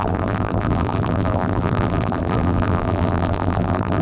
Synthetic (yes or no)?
yes